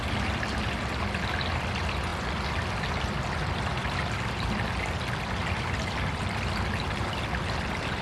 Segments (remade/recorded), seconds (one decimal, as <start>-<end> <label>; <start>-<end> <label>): 0.0-8.0 recorded